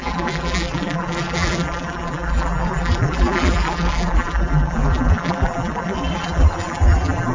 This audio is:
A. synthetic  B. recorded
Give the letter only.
A